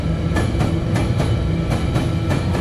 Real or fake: real